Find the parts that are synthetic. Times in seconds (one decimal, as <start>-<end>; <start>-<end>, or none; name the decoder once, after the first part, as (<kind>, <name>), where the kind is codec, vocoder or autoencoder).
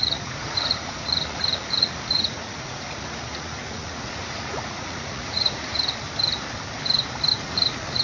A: 0.0-5.7 (vocoder, Vocos); 7.3-8.0